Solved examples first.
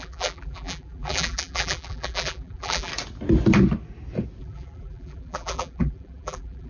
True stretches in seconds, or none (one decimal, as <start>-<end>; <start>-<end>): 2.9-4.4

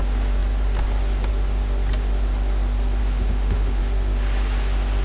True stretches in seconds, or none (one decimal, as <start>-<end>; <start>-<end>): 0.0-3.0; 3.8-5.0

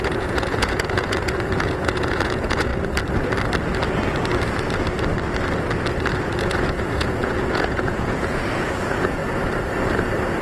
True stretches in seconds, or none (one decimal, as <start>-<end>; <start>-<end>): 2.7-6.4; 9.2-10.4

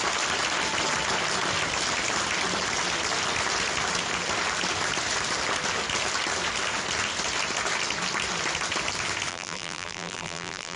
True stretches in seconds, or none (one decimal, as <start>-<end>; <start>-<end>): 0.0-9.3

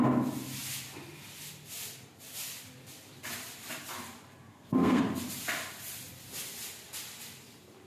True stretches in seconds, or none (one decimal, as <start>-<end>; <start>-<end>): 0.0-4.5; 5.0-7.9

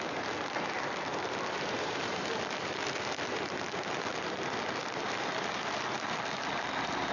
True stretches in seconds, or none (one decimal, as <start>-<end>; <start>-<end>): 0.0-1.1; 4.1-4.8; 6.4-7.1